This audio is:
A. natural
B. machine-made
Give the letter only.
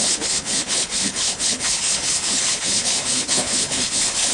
B